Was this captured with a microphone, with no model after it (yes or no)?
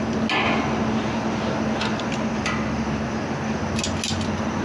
yes